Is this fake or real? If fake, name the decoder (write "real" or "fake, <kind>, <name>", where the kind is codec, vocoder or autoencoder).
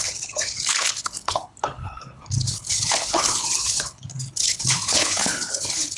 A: fake, codec, HILCodec